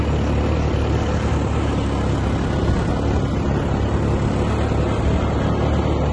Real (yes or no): yes